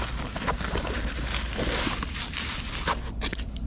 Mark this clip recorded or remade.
recorded